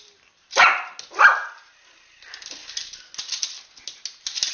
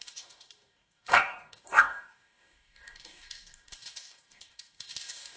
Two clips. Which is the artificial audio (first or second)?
second